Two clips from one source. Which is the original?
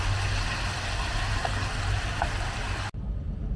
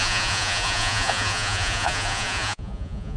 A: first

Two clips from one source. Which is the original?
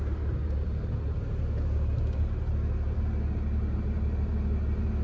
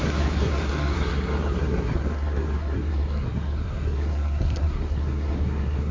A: first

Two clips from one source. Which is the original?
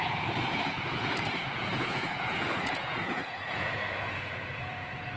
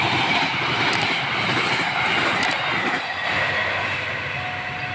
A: second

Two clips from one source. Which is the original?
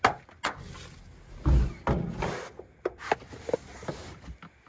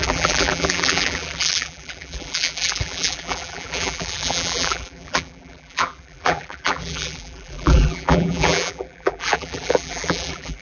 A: first